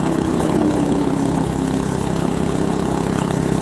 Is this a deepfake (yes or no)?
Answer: yes